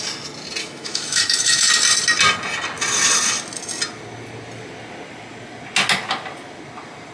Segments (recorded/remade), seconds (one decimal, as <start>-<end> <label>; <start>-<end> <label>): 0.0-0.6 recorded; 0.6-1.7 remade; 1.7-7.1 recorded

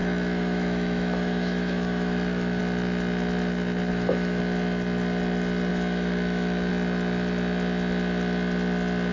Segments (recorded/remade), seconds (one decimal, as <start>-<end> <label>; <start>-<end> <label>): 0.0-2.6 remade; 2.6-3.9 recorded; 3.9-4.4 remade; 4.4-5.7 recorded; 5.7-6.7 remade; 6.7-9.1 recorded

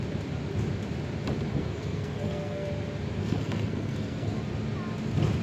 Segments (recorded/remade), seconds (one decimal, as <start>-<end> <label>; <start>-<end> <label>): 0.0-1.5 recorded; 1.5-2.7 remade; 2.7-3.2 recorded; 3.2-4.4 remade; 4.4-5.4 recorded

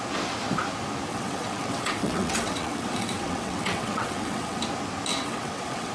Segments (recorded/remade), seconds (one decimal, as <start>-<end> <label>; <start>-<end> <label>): 0.0-1.1 recorded; 1.1-4.6 remade; 4.6-5.1 recorded; 5.1-5.9 remade